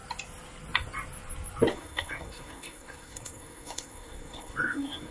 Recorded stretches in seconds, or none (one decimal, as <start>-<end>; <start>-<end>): 0.0-1.7